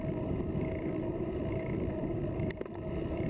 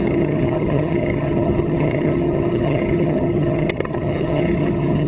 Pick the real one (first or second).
first